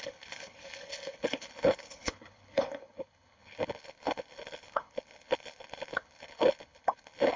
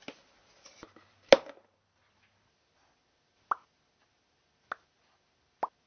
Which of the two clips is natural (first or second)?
second